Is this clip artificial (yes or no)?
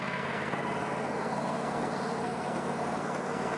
yes